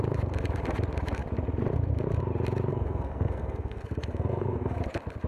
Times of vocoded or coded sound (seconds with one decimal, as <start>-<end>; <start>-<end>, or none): 2.7-4.8